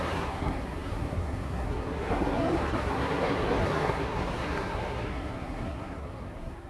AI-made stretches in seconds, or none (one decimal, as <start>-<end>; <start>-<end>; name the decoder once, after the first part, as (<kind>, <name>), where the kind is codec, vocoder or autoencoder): 0.0-6.7 (codec, SNAC)